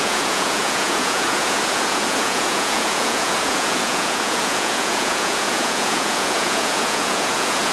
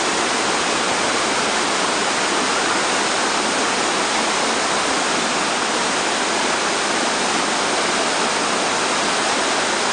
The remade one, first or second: first